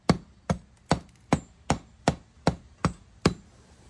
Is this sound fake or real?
real